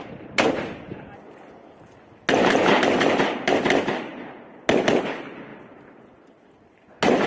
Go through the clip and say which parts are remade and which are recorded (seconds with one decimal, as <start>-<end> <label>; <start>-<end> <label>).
0.0-7.3 recorded